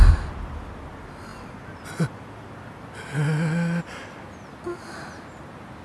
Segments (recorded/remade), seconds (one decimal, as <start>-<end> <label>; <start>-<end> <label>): 0.0-5.8 recorded